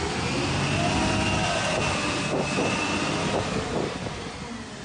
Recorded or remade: recorded